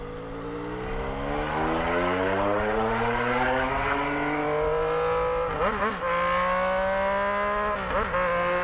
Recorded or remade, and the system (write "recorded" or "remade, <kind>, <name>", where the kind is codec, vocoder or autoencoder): recorded